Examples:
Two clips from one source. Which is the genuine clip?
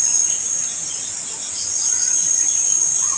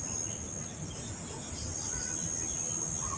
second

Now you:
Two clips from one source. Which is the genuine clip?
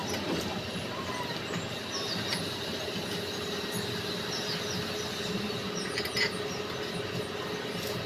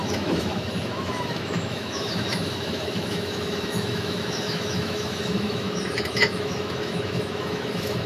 first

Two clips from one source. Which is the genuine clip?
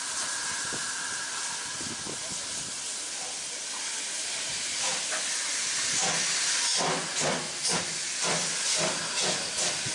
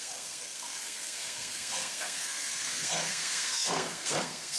first